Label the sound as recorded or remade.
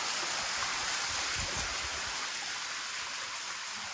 recorded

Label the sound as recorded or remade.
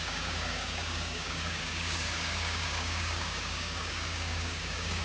remade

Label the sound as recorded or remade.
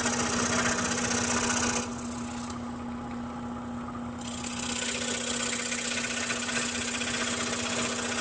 recorded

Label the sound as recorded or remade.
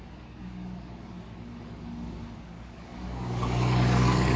remade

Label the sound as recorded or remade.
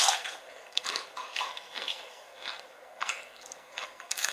remade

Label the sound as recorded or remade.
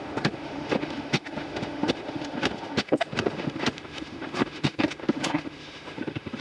remade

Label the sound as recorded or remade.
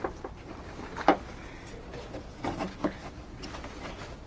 recorded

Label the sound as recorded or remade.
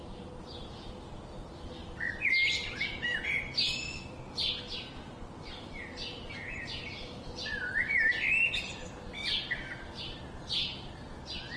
recorded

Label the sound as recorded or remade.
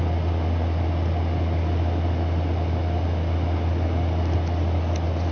recorded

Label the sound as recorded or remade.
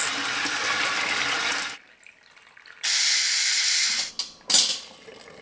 recorded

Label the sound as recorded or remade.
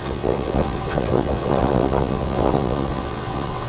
remade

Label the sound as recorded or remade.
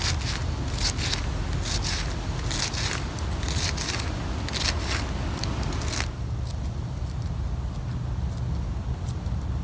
recorded